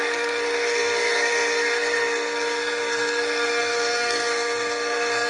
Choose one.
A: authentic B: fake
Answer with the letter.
B